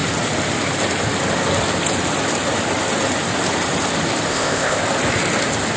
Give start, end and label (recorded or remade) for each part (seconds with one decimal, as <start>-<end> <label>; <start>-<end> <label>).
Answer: 0.0-4.3 recorded; 4.3-4.8 remade; 4.8-5.8 recorded